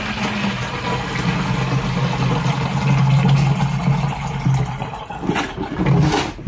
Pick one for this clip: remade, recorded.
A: recorded